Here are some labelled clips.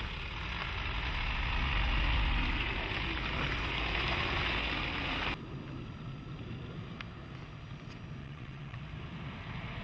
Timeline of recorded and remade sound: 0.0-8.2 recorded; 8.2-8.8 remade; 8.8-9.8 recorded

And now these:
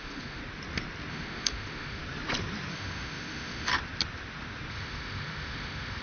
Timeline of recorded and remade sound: 0.0-0.4 remade; 0.4-1.1 recorded; 1.1-2.0 remade; 2.0-2.7 recorded; 2.7-3.7 remade; 3.7-4.7 recorded; 4.7-6.0 remade